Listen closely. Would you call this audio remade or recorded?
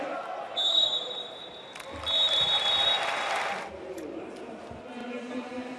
recorded